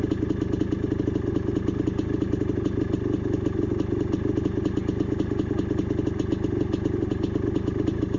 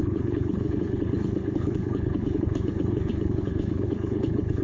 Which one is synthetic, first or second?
second